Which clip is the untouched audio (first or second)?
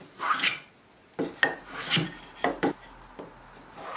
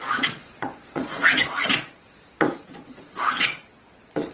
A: first